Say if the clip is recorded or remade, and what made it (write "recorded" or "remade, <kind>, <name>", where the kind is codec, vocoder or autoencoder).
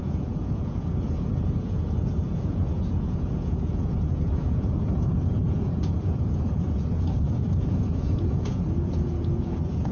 remade, vocoder, Vocos